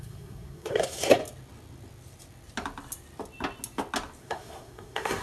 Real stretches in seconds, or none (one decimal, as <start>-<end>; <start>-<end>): 1.2-4.2